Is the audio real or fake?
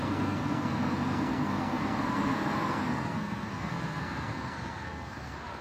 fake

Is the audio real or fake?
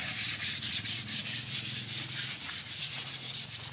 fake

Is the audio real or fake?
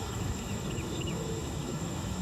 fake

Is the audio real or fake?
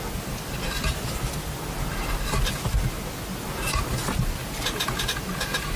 real